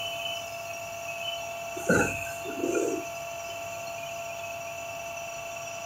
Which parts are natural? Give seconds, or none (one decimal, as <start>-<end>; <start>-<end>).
0.0-5.9